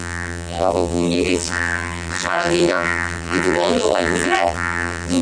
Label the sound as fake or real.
fake